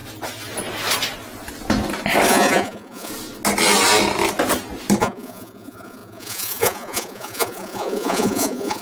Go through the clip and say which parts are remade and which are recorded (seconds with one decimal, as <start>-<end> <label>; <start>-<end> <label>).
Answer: 0.0-2.3 recorded; 2.3-3.1 remade; 3.1-5.0 recorded; 5.0-8.8 remade